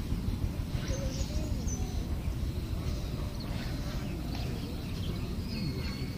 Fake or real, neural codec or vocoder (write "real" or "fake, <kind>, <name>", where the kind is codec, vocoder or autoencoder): real